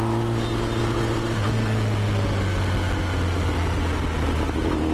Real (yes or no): yes